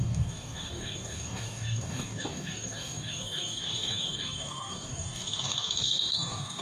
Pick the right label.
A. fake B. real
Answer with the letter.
A